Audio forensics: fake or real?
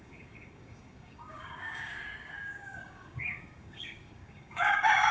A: fake